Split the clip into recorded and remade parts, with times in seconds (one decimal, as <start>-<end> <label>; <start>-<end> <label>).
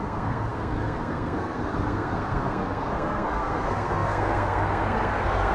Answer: 0.0-5.5 remade